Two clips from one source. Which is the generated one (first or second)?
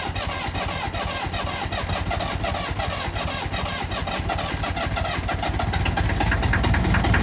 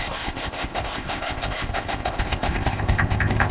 second